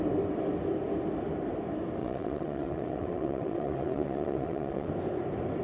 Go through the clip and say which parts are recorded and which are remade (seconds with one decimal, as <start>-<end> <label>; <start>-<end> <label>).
0.0-2.0 recorded; 2.0-4.9 remade; 4.9-5.6 recorded